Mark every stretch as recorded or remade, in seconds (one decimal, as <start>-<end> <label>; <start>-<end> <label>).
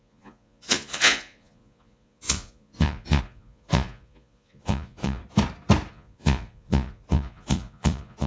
0.0-5.2 remade; 5.2-5.9 recorded; 5.9-8.3 remade